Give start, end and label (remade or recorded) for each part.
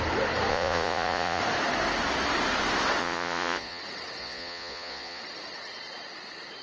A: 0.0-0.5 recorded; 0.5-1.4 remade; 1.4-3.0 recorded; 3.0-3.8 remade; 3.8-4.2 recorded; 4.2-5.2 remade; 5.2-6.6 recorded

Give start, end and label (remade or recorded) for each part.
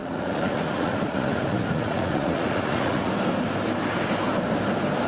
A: 0.0-3.1 remade; 3.1-5.1 recorded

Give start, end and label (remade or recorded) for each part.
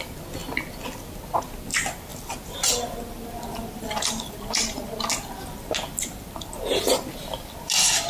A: 0.0-8.1 recorded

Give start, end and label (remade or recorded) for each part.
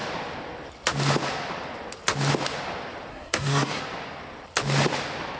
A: 0.0-3.1 recorded; 3.1-3.8 remade; 3.8-5.4 recorded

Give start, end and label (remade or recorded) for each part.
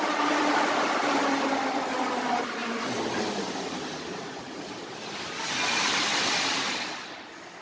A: 0.0-4.1 recorded; 4.1-4.7 remade; 4.7-7.6 recorded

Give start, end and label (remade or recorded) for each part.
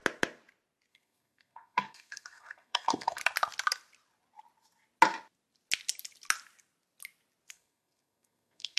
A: 0.0-0.9 recorded; 0.9-3.2 remade; 3.2-7.5 recorded; 7.5-8.8 remade